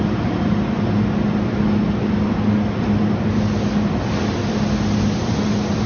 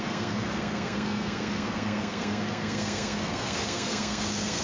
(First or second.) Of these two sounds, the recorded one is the first